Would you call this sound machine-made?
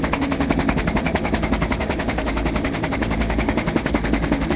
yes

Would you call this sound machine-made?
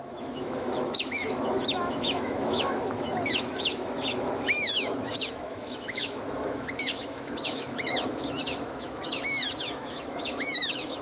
yes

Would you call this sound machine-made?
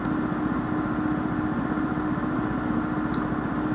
no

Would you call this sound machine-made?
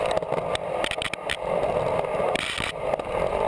no